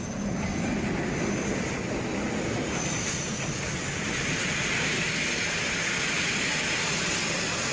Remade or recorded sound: recorded